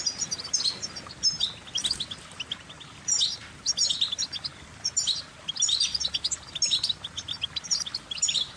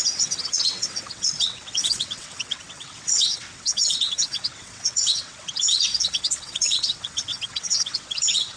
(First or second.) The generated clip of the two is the second